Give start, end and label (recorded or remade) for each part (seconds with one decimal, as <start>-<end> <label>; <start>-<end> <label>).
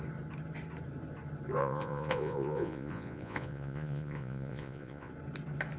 0.0-1.6 recorded; 1.6-5.1 remade; 5.1-5.8 recorded